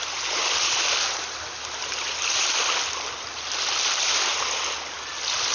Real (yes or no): yes